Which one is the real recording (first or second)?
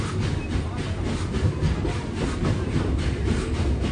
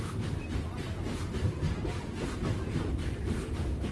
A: first